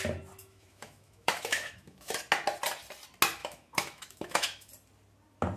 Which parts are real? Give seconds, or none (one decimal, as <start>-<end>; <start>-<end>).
0.0-0.4; 2.2-3.4; 4.7-5.6